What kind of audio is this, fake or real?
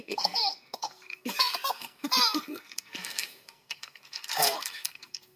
fake